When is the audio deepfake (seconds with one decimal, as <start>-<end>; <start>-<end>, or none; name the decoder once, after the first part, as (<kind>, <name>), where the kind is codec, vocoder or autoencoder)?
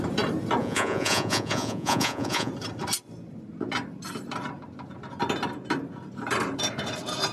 0.6-2.5 (vocoder, Vocos)